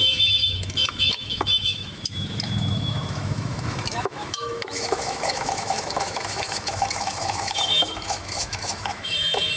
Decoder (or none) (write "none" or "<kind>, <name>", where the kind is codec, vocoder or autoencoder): autoencoder, DAC-VAE